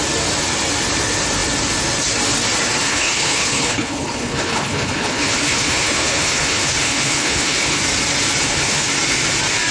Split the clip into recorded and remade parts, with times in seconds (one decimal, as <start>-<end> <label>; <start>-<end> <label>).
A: 0.0-2.8 recorded; 2.8-7.8 remade; 7.8-8.4 recorded; 8.4-8.9 remade; 8.9-9.7 recorded